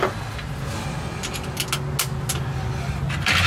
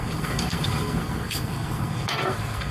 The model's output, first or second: second